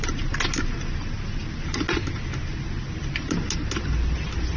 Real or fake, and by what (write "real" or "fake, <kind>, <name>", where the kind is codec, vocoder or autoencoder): real